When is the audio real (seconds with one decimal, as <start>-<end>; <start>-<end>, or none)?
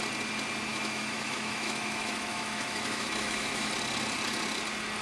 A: 0.0-0.7; 3.7-5.0